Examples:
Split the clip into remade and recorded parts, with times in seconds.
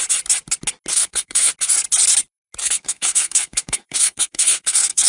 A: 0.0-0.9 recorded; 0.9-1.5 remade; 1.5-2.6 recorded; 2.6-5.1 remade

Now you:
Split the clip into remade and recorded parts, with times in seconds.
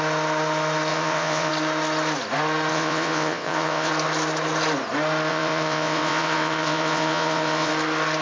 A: 0.0-0.9 recorded; 0.9-1.5 remade; 1.5-2.7 recorded; 2.7-3.9 remade; 3.9-5.3 recorded; 5.3-7.7 remade; 7.7-8.2 recorded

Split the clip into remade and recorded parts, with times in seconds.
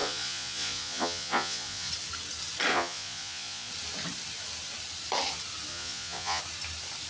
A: 0.0-1.9 remade; 1.9-2.7 recorded; 2.7-3.7 remade; 3.7-5.7 recorded; 5.7-6.4 remade; 6.4-7.1 recorded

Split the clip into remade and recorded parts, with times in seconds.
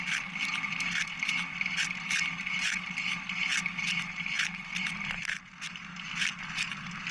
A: 0.0-7.1 recorded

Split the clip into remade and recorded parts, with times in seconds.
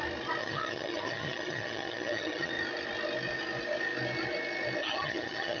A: 0.0-0.4 recorded; 0.4-2.5 remade; 2.5-4.8 recorded; 4.8-5.6 remade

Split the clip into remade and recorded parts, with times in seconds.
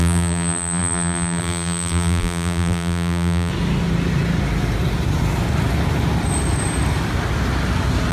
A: 0.0-3.5 remade; 3.5-8.1 recorded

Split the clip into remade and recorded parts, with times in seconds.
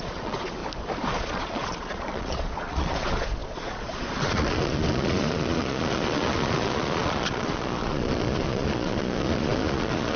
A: 0.0-0.6 remade; 0.6-1.1 recorded; 1.1-10.2 remade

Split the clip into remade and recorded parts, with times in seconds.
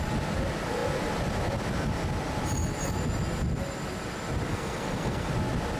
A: 0.0-4.5 recorded; 4.5-5.3 remade; 5.3-5.8 recorded